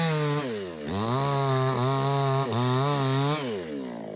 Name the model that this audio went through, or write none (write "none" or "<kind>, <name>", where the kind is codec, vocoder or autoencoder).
none